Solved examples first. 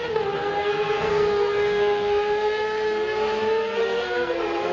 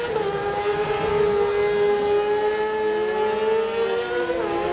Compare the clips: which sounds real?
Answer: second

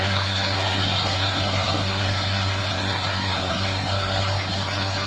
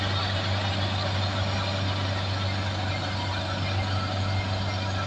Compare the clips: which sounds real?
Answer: second